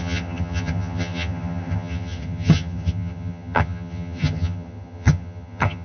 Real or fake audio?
fake